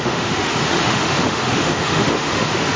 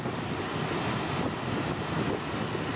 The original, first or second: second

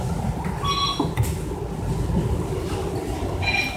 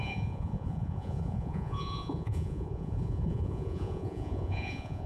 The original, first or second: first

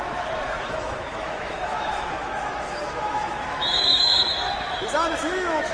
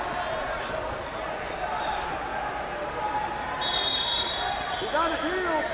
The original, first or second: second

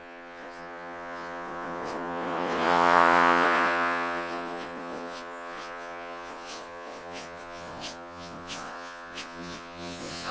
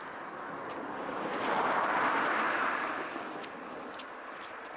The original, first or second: second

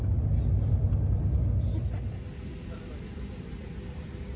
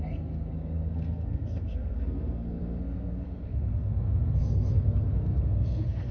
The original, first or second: first